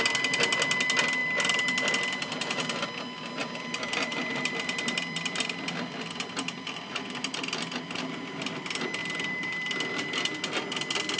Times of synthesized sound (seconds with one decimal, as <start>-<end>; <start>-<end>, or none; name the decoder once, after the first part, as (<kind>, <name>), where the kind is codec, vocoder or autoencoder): 1.2-1.9 (vocoder, BigVGAN v2); 3.4-8.2; 9.0-10.2